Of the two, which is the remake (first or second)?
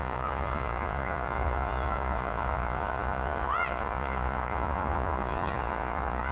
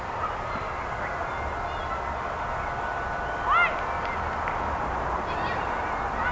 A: first